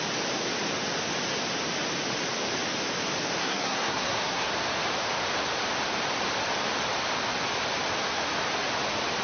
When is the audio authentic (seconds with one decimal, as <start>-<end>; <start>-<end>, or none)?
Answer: 0.0-3.4; 4.5-9.2